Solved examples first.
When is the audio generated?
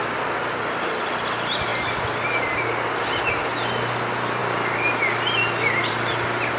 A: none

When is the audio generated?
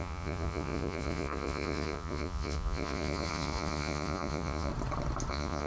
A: 0.0-4.7 (vocoder, Vocos); 5.3-5.7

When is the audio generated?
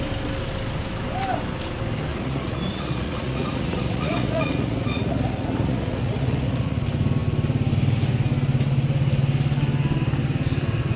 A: 2.1-6.8 (vocoder, Vocos)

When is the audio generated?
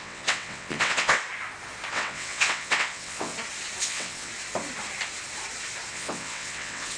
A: 0.0-1.2 (vocoder, WaveNeXt); 1.9-3.3; 3.8-4.3; 5.9-7.0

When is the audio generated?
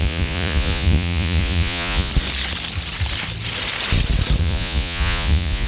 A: 0.0-2.1 (vocoder, Vocos); 4.4-5.7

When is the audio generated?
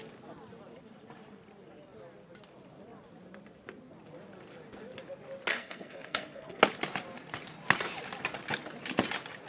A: 5.5-6.6 (codec, SNAC)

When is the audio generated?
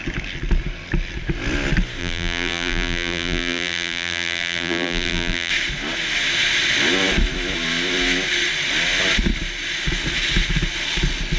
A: 2.0-5.5 (vocoder, BigVGAN v2)